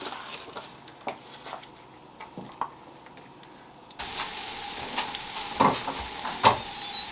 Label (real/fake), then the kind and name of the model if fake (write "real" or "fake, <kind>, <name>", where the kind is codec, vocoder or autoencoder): real